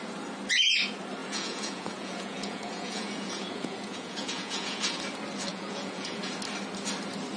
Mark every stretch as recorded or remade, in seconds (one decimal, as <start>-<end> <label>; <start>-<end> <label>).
0.0-1.2 recorded; 1.2-5.0 remade; 5.0-5.5 recorded; 5.5-6.2 remade; 6.2-7.4 recorded